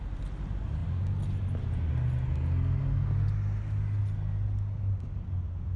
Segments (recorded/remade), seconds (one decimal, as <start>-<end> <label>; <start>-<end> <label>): 0.0-5.8 recorded